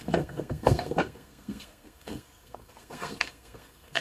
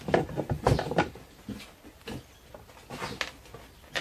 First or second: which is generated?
first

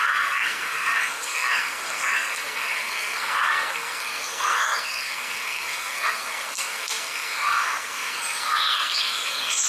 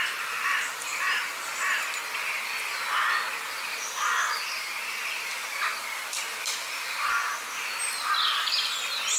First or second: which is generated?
first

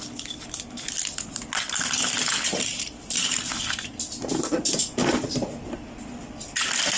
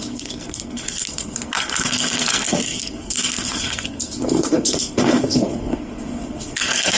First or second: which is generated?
second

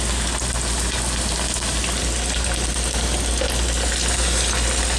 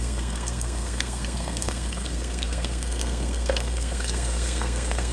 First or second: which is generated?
second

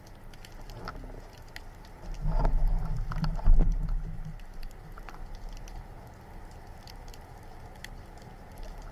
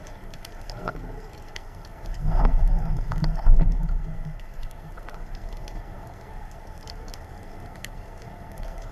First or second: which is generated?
second